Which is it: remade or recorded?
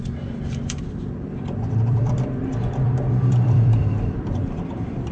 remade